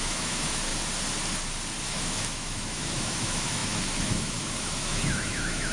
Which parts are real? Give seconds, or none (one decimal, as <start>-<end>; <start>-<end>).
0.7-1.8